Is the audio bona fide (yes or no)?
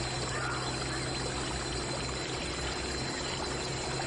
yes